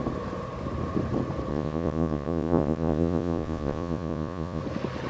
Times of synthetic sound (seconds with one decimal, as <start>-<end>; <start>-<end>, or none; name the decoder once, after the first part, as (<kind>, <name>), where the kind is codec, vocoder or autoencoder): 1.5-4.6 (vocoder, Vocos)